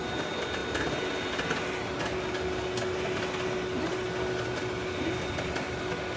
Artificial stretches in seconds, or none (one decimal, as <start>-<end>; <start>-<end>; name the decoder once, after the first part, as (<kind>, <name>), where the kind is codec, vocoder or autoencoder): none